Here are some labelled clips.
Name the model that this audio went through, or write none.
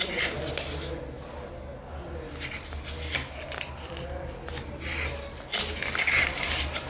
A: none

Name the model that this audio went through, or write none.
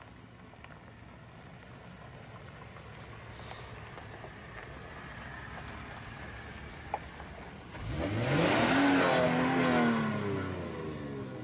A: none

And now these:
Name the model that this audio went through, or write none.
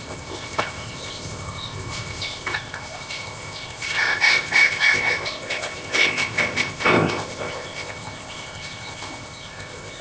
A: codec, ZipCodec